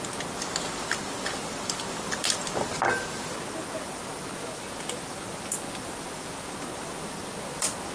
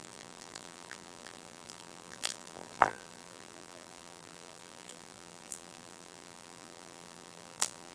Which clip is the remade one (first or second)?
second